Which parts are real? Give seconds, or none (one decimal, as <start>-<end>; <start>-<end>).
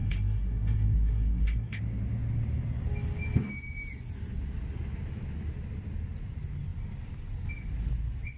1.8-8.4